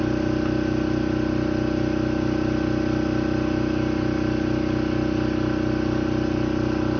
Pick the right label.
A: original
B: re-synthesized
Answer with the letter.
A